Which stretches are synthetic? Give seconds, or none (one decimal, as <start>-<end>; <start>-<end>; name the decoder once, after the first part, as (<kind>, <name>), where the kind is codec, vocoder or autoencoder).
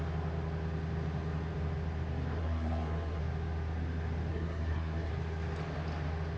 2.4-3.2 (codec, SNAC); 4.3-5.1